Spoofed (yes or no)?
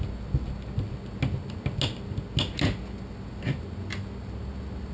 no